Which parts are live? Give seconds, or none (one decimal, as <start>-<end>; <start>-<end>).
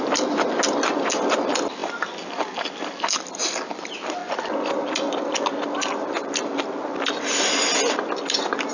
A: 0.0-8.7